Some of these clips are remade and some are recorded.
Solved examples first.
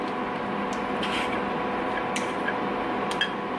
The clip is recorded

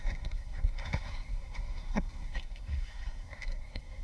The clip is remade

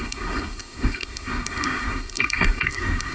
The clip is remade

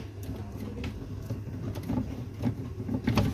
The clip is recorded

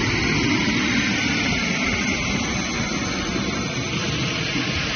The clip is recorded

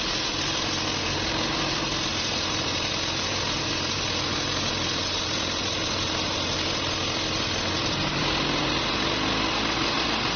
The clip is recorded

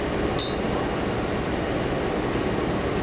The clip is recorded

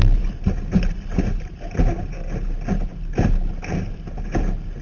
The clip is recorded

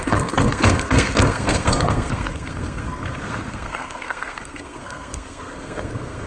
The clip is remade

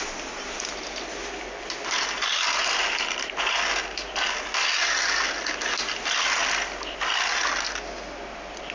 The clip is recorded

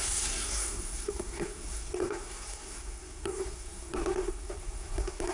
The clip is remade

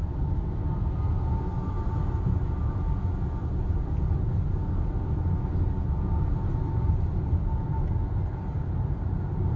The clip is recorded